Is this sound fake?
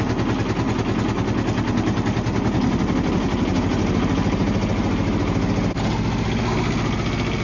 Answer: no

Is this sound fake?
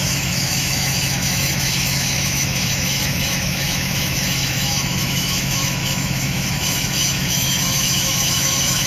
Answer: yes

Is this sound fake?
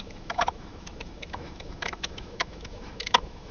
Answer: yes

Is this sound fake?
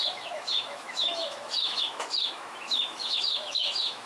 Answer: yes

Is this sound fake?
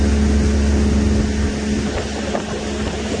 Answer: no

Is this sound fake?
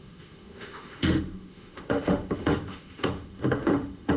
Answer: yes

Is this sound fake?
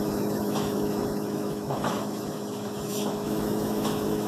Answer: yes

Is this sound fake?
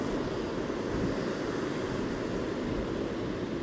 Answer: no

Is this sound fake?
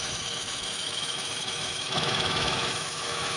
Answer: yes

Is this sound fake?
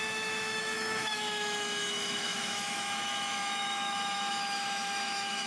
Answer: yes